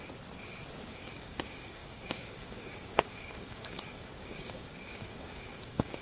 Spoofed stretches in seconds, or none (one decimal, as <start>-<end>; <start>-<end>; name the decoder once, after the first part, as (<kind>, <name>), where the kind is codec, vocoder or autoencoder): 0.9-6.0 (codec, DAC)